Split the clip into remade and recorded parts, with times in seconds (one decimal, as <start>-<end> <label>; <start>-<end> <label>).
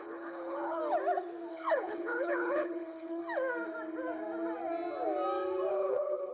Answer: 0.0-0.8 remade; 0.8-1.5 recorded; 1.5-3.2 remade; 3.2-5.7 recorded; 5.7-6.3 remade